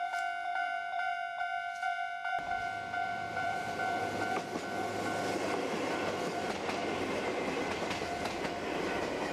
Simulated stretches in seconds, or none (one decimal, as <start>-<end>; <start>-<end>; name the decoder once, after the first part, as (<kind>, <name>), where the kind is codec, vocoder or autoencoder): 0.6-1.4 (vocoder, BigVGAN v2); 3.3-4.4; 6.8-8.5